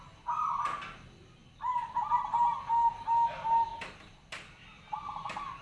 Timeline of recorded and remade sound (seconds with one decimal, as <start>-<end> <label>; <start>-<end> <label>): 0.0-5.6 recorded